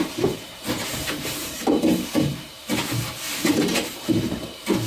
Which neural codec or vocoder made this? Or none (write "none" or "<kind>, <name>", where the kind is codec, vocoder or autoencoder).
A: vocoder, BigVGAN v2